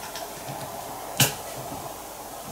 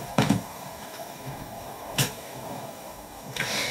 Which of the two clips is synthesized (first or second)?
second